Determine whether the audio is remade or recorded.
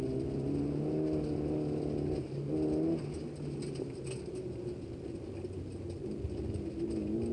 recorded